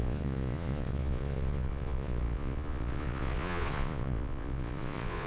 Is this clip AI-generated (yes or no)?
yes